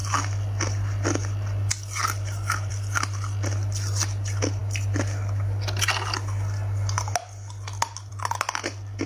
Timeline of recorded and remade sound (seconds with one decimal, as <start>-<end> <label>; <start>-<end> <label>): 0.0-9.1 recorded